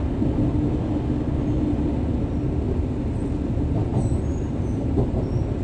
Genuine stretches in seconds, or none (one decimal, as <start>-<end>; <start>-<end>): 0.0-3.9